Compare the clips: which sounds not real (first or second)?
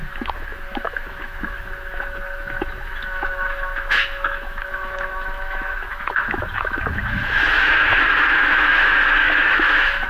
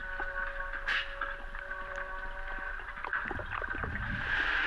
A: first